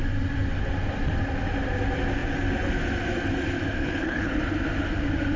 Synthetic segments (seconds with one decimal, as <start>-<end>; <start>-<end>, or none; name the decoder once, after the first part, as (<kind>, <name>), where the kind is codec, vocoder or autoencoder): 3.8-4.4 (codec, HILCodec)